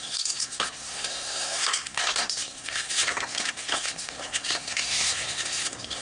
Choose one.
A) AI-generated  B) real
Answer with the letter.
A